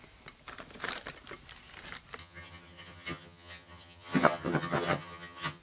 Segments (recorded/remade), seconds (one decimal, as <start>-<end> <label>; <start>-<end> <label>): 0.0-2.2 recorded; 2.2-5.6 remade